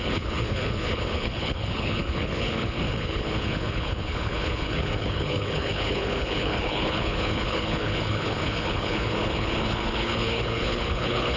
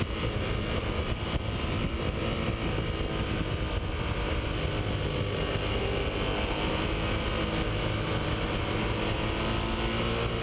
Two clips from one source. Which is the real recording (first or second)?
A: second